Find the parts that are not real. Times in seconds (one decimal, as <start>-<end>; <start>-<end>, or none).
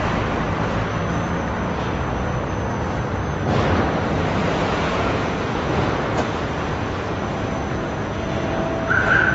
4.9-8.6